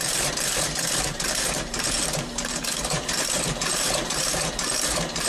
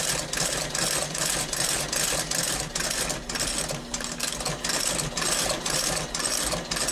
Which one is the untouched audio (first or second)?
second